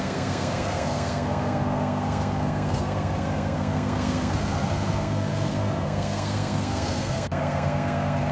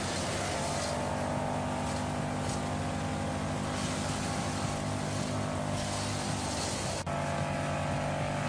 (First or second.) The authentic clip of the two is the second